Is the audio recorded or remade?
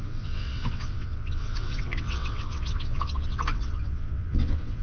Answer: remade